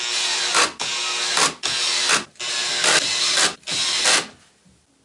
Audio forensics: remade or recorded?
recorded